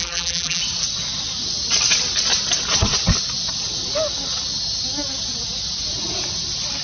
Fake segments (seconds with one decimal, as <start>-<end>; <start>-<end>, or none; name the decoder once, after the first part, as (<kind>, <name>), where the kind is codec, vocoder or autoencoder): 0.0-0.6 (vocoder, BigVGAN v2)